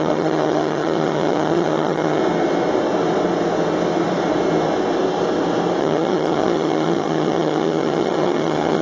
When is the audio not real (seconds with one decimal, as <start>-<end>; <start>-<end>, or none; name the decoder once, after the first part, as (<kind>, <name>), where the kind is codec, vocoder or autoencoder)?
0.0-2.2 (vocoder, HiFi-GAN); 5.8-8.8